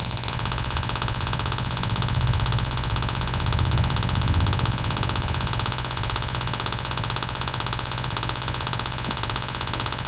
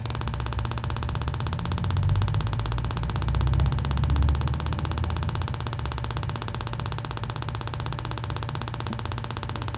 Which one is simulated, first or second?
first